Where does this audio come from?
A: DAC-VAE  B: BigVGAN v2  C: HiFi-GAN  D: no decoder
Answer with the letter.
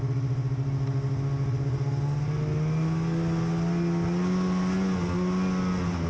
D